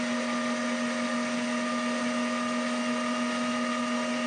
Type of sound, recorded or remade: recorded